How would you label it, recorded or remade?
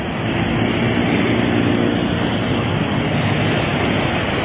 recorded